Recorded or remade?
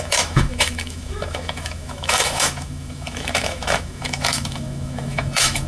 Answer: remade